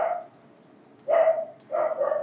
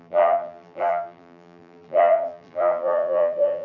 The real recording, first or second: first